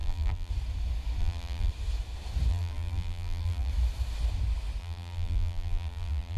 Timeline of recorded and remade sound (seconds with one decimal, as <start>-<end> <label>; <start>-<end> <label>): 0.0-0.5 remade; 0.5-1.2 recorded; 1.2-1.7 remade; 1.7-2.5 recorded; 2.5-3.7 remade; 3.7-4.8 recorded; 4.8-6.4 remade